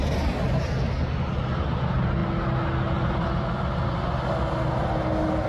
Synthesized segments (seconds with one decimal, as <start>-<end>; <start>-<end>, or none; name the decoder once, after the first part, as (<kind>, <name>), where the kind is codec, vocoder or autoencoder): none